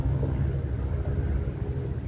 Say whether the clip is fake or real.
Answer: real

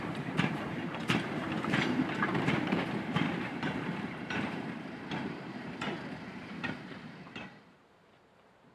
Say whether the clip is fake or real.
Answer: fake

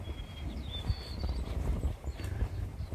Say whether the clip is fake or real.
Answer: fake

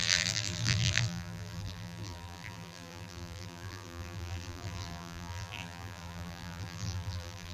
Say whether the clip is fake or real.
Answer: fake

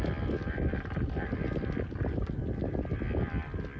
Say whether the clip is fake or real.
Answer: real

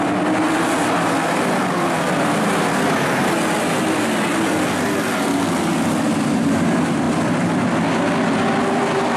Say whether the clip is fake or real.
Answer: real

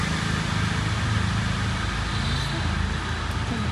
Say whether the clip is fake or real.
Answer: real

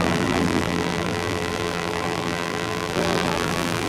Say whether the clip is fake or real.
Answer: fake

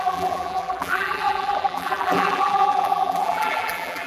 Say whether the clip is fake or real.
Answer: fake